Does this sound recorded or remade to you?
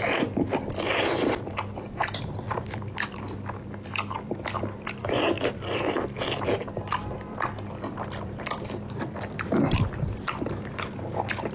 remade